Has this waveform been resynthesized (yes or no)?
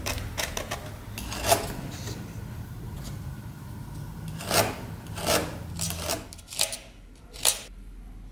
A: no